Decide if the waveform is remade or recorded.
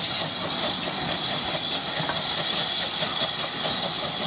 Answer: recorded